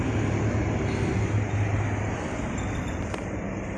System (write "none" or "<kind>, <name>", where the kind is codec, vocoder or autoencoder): none